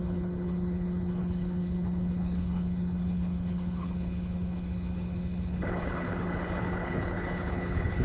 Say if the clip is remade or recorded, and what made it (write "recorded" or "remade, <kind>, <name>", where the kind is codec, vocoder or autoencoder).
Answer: remade, codec, HILCodec